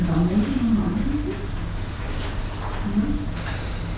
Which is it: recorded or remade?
recorded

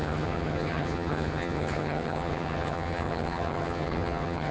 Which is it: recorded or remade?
remade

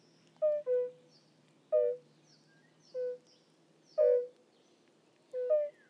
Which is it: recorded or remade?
recorded